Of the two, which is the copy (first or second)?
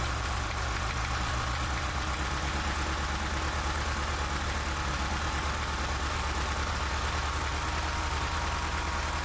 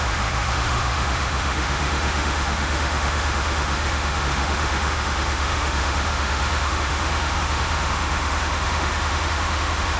second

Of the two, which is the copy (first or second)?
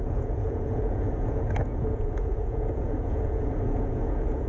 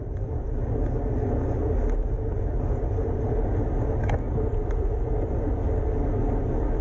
first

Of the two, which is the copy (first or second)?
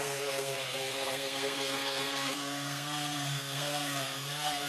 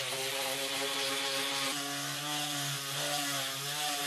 first